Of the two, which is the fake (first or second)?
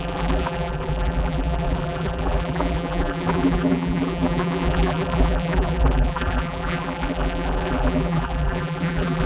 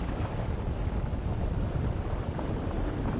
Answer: first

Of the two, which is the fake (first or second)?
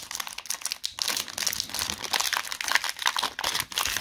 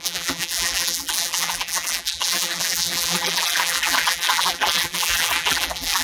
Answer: second